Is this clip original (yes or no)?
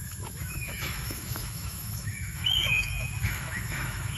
no